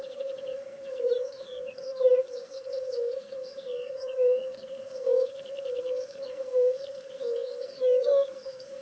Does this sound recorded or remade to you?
remade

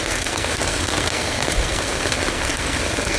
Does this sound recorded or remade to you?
remade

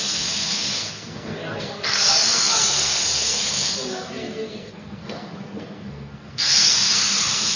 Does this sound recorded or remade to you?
remade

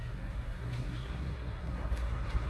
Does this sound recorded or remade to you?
remade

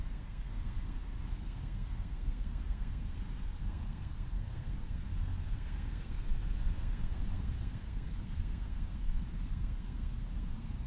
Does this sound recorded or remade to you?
remade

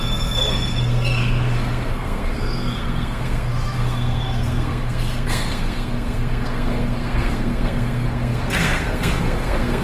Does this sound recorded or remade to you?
remade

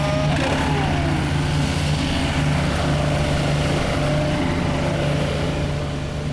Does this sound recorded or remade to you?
recorded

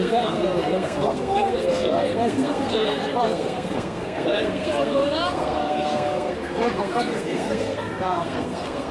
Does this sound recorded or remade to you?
remade